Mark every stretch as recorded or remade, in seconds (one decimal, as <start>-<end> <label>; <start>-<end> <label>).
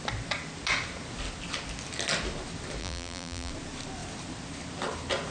0.0-2.8 recorded; 2.8-3.5 remade; 3.5-5.3 recorded